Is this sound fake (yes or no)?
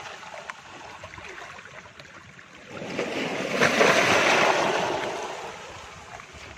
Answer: no